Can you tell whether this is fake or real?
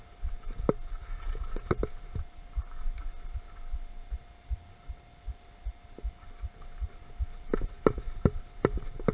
real